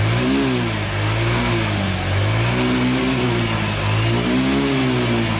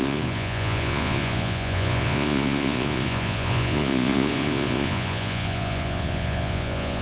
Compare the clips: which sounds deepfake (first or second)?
second